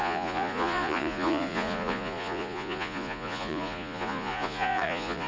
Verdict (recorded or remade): remade